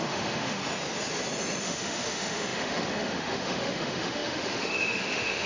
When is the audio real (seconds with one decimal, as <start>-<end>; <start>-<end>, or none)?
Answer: 0.6-1.6